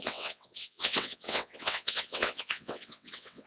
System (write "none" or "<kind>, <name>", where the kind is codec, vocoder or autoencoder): vocoder, WaveNeXt